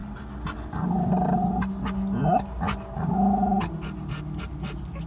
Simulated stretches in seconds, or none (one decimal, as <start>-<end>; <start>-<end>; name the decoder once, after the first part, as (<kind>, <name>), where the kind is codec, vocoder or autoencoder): none